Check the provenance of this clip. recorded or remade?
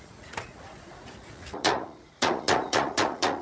remade